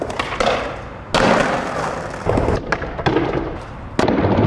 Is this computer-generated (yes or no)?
no